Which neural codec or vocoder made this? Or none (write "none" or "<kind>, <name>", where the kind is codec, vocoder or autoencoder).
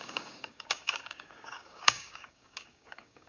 codec, DAC